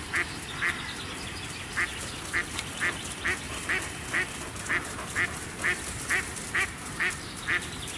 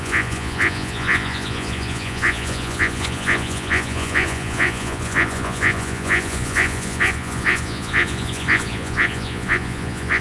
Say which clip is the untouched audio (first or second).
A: first